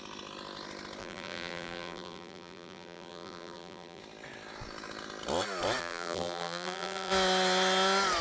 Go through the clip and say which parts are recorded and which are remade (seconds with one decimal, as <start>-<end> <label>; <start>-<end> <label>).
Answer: 0.0-1.0 recorded; 1.0-4.0 remade; 4.0-5.8 recorded; 5.8-7.1 remade; 7.1-8.2 recorded